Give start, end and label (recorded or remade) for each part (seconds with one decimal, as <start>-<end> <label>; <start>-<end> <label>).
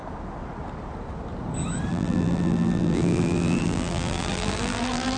0.0-1.9 recorded; 1.9-5.2 remade